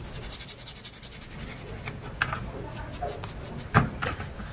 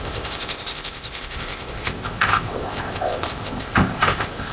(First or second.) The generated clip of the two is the second